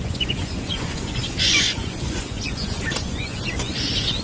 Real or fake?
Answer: fake